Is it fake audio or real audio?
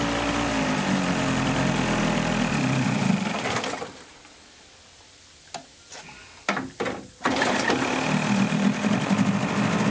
real